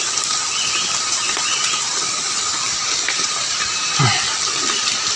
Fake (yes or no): yes